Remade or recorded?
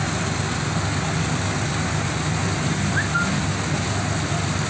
recorded